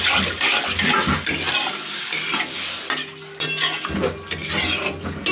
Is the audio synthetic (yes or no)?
no